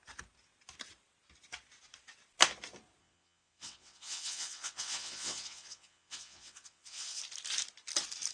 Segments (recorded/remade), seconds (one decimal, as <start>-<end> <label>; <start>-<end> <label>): 0.0-3.0 recorded; 3.0-7.2 remade; 7.2-8.3 recorded